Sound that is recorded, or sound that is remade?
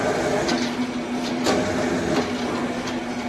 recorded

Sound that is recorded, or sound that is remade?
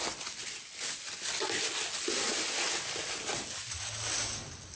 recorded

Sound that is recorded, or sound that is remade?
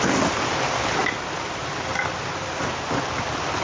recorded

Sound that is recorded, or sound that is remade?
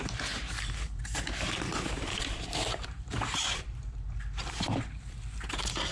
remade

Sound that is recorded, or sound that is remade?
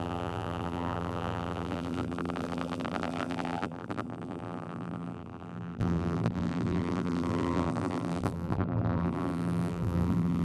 remade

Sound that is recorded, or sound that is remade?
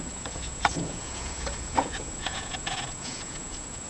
remade